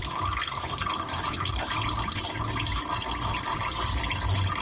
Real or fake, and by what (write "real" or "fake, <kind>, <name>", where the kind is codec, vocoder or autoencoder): real